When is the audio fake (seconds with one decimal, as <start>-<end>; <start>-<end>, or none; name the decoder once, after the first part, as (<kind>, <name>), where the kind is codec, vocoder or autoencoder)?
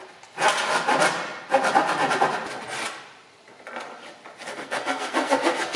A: 4.4-5.8 (codec, SNAC)